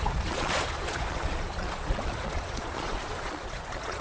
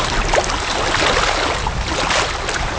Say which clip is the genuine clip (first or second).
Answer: second